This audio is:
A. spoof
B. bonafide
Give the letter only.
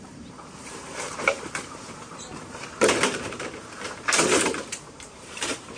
A